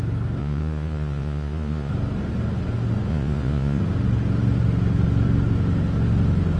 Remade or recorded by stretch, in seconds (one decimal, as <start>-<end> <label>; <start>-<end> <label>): 0.0-0.4 recorded; 0.4-1.9 remade; 1.9-3.1 recorded; 3.1-3.8 remade; 3.8-6.6 recorded